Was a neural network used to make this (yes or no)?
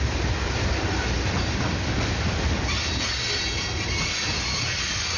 no